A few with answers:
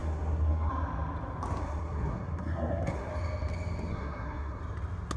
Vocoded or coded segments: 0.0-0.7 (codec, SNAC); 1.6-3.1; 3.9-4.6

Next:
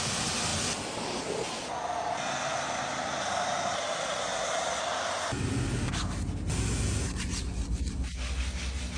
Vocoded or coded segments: none

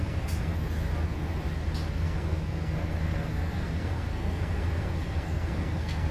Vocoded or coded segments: 0.0-0.5 (codec, SNAC); 1.9-6.1

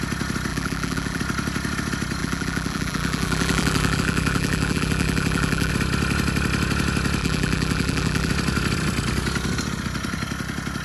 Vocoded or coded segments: 0.5-1.2 (vocoder, BigVGAN v2); 2.2-5.7; 7.2-8.3

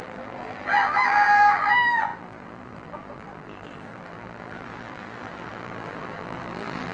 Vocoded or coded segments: 0.0-6.9 (vocoder, BigVGAN v2)